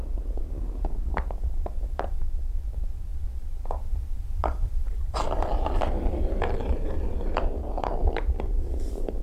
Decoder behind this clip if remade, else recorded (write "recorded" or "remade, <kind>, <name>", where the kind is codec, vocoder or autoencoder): remade, vocoder, BigVGAN v2